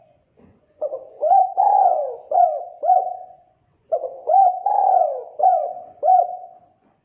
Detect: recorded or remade remade